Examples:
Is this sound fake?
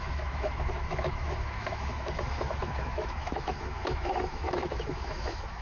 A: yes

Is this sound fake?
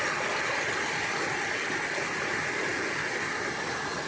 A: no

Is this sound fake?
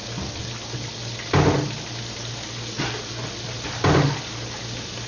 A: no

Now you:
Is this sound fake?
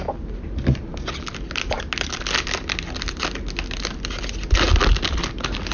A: no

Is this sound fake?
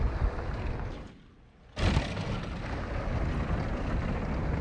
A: no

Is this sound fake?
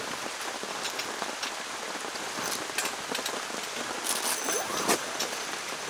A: no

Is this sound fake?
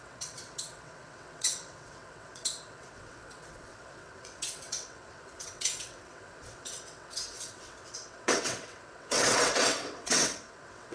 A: yes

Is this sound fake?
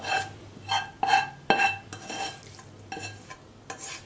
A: no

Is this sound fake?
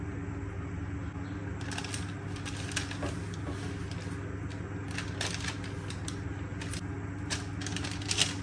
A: no